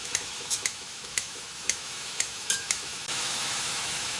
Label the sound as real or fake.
fake